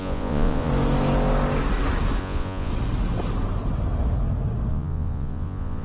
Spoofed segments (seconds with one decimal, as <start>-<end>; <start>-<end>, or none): 0.0-0.7; 2.2-2.7; 4.7-5.8